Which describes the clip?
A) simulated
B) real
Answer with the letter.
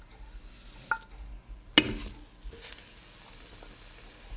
B